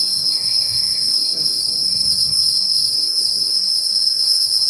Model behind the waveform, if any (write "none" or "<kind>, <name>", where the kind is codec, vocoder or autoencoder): codec, SNAC